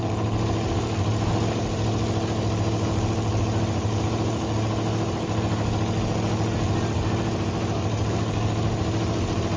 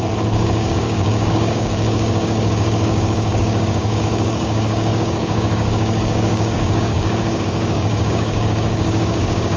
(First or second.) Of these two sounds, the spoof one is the second